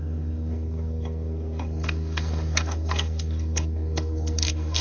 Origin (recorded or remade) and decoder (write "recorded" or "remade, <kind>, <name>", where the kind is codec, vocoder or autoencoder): remade, codec, SNAC